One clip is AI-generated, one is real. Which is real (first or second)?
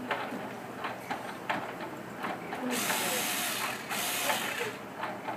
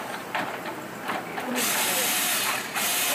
first